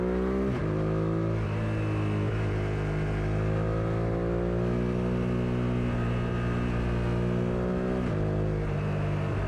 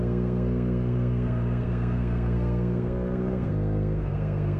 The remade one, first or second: second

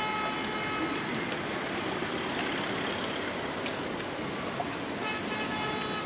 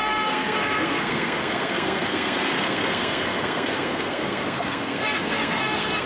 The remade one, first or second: second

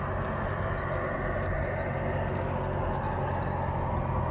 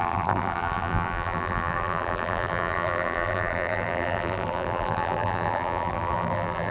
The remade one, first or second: second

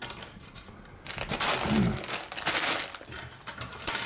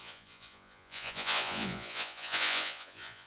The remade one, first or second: second